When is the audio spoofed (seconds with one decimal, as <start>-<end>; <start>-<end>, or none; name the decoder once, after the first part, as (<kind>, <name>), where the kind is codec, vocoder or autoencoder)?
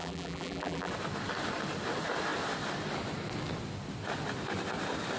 0.0-0.9 (vocoder, BigVGAN v2)